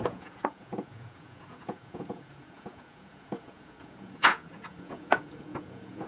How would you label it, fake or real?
fake